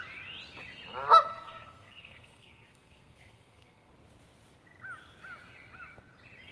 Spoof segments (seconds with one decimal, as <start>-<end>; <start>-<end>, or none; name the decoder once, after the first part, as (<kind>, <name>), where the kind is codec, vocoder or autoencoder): 1.3-3.9 (codec, SNAC)